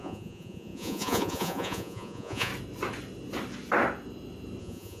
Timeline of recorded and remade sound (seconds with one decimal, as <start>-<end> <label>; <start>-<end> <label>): 0.0-2.5 remade; 2.5-4.6 recorded; 4.6-5.0 remade

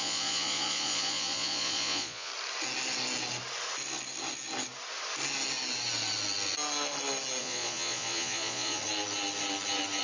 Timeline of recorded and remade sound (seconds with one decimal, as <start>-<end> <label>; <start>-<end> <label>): 0.0-2.3 remade; 2.3-7.4 recorded; 7.4-8.8 remade; 8.8-10.0 recorded

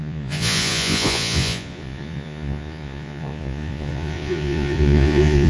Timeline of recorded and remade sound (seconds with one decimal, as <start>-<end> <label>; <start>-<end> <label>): 0.0-5.5 remade

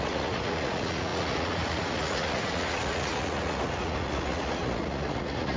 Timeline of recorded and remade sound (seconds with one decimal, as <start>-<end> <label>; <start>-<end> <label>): 0.0-5.6 remade

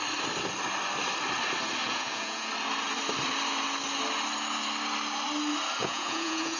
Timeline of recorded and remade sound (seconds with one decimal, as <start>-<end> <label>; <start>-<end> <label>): 0.0-1.8 recorded; 1.8-2.5 remade; 2.5-5.8 recorded; 5.8-6.6 remade

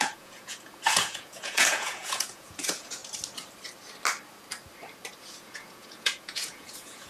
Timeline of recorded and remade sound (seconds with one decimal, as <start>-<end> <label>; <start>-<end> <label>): 0.0-3.0 remade; 3.0-5.2 recorded; 5.2-7.1 remade

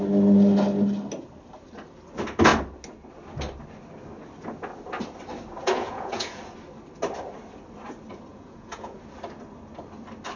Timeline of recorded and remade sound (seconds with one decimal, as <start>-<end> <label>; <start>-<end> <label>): 0.0-5.6 recorded; 5.6-6.4 remade; 6.4-8.3 recorded; 8.3-9.0 remade; 9.0-10.4 recorded